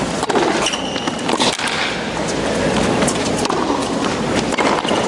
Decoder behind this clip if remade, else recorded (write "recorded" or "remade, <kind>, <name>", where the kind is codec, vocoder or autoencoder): recorded